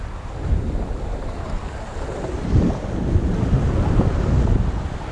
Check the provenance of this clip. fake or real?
real